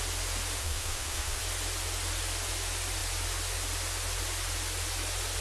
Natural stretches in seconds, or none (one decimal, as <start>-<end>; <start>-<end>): 0.0-0.6; 1.4-5.4